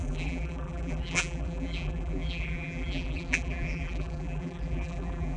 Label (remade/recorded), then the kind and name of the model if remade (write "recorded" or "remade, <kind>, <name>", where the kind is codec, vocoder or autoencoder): remade, vocoder, BigVGAN v2